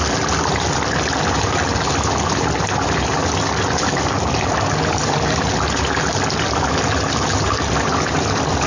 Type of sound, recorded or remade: recorded